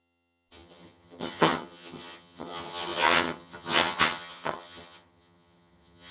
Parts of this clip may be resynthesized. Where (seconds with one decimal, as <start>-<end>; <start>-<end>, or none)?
0.0-6.1